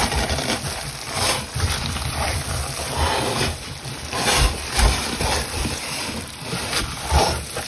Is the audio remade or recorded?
remade